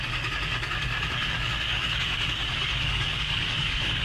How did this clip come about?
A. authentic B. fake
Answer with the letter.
B